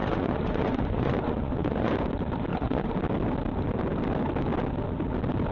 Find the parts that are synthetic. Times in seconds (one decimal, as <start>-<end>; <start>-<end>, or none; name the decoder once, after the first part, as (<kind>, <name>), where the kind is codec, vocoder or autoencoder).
0.0-1.9 (vocoder, Vocos); 2.5-3.0